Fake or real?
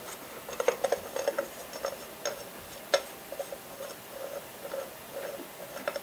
real